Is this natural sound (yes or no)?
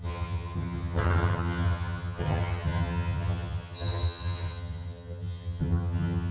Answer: no